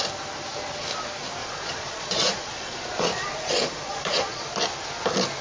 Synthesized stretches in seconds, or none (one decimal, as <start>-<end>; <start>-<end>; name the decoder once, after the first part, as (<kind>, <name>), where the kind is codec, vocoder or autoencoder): 1.4-4.6 (vocoder, Vocos)

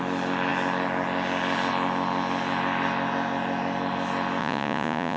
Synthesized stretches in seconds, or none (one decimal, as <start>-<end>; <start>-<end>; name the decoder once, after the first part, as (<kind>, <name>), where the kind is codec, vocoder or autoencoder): 4.4-5.2 (vocoder, Vocos)

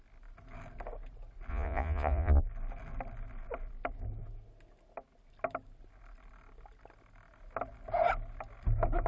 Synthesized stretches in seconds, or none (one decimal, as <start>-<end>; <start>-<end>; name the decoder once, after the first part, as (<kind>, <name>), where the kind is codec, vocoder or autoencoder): 1.5-2.4 (vocoder, Vocos)

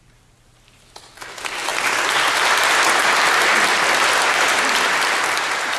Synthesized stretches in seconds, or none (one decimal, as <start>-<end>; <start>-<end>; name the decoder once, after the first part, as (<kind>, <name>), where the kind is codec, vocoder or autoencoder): none